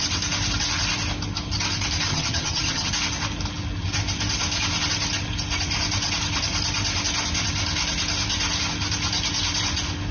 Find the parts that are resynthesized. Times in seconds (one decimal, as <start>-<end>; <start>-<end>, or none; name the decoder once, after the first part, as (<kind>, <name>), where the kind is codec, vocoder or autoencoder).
2.1-2.9 (vocoder, HiFi-GAN)